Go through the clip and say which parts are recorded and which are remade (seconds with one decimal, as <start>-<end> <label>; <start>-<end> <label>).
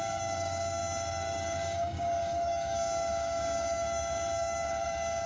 0.0-5.3 remade